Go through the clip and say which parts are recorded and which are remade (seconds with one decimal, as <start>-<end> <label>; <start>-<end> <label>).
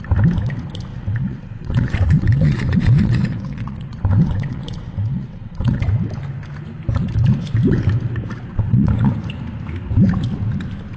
0.0-0.9 recorded; 0.9-5.8 remade; 5.8-8.5 recorded; 8.5-9.1 remade; 9.1-11.0 recorded